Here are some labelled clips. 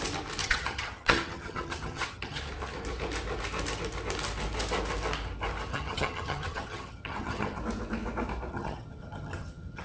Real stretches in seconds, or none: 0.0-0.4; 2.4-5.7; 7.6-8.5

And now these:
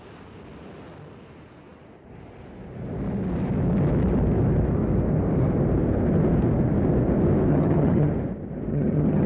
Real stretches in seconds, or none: 0.0-7.5; 8.1-8.7

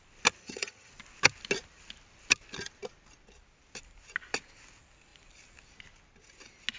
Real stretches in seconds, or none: 0.0-0.4; 0.9-6.8

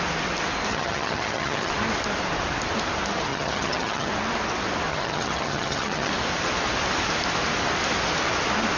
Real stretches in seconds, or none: 0.0-0.7; 1.7-3.3; 4.1-4.9; 6.1-8.8

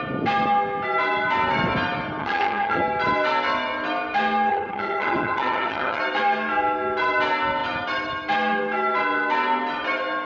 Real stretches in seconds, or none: 0.0-2.2; 2.8-4.5; 6.0-10.2

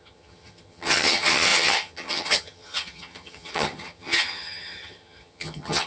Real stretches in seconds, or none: none

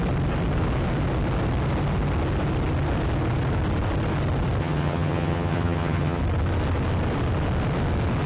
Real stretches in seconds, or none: 0.0-4.6; 6.2-8.3